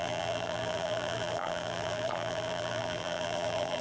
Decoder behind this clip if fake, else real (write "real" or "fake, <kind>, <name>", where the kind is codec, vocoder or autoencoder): fake, vocoder, BigVGAN v2